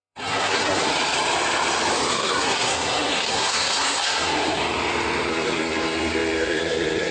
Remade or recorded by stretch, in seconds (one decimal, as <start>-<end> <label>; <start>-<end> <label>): 0.0-0.9 remade; 0.9-2.1 recorded; 2.1-4.6 remade; 4.6-5.3 recorded; 5.3-7.1 remade

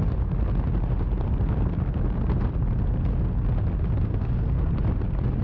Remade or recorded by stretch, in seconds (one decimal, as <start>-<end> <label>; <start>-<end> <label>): 0.0-4.1 recorded; 4.1-4.7 remade; 4.7-5.4 recorded

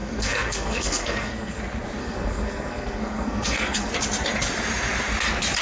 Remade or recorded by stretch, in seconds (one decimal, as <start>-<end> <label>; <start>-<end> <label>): 0.0-1.6 remade; 1.6-2.0 recorded; 2.0-3.9 remade; 3.9-5.6 recorded

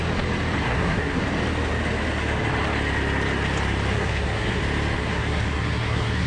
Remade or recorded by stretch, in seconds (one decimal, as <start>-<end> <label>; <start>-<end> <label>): 0.0-0.6 recorded; 0.6-1.2 remade; 1.2-3.9 recorded; 3.9-4.6 remade; 4.6-5.0 recorded; 5.0-6.3 remade

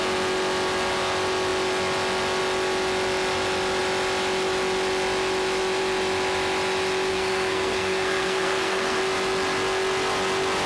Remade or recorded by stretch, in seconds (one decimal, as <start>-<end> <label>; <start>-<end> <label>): 0.0-7.1 recorded; 7.1-9.0 remade; 9.0-10.7 recorded